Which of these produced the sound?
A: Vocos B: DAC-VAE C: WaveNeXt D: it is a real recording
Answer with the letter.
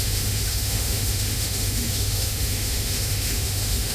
B